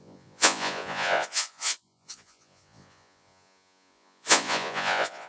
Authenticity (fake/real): fake